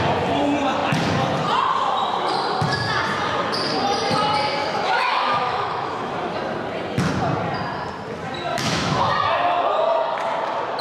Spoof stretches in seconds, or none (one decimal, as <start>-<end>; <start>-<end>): 4.6-6.1; 8.5-9.1

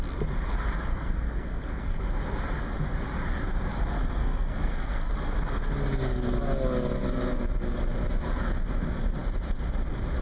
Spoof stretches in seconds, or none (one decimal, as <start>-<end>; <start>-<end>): 0.9-2.0; 4.2-5.1